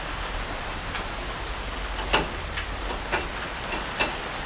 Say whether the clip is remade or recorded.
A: recorded